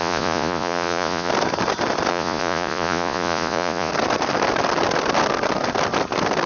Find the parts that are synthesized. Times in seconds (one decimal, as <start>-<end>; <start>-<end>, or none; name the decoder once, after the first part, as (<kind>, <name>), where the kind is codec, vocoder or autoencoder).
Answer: 0.0-1.3 (vocoder, Vocos); 2.1-3.9